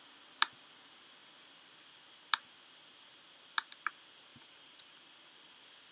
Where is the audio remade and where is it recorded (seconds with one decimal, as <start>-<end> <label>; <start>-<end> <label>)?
0.0-4.3 recorded; 4.3-5.0 remade; 5.0-5.9 recorded